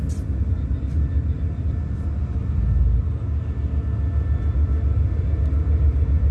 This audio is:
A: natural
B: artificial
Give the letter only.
A